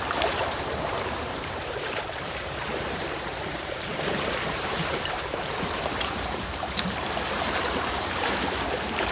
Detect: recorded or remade remade